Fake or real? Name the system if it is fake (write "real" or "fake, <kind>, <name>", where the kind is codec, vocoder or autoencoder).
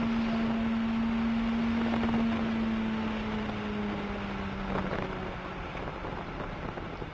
real